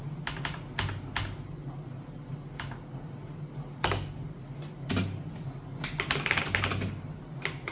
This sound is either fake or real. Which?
real